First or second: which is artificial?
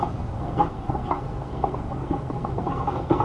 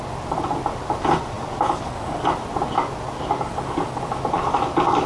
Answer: first